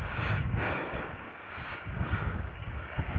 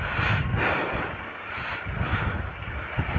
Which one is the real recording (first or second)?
second